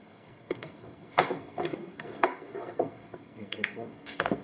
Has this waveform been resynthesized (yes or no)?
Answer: yes